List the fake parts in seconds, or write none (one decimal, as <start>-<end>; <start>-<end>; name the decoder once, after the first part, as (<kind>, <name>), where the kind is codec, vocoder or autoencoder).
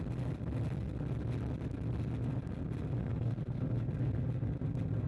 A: 3.0-3.6 (codec, SNAC)